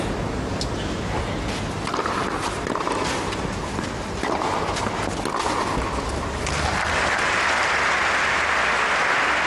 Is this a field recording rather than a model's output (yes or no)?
yes